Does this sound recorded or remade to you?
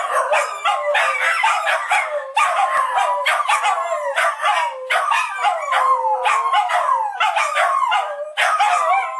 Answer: recorded